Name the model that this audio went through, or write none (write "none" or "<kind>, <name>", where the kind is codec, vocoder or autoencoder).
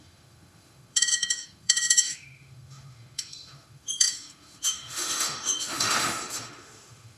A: autoencoder, DAC-VAE